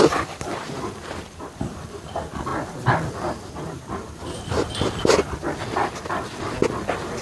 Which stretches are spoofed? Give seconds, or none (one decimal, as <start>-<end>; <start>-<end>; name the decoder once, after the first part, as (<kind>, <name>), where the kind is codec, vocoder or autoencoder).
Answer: none